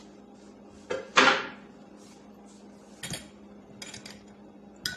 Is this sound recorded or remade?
recorded